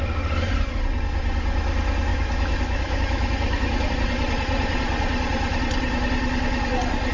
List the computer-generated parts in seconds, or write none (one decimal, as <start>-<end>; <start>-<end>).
2.1-3.9